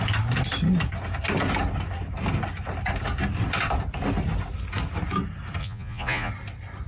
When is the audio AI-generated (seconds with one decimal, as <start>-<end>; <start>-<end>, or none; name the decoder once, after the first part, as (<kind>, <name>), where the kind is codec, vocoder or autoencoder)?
5.6-6.3 (vocoder, Vocos)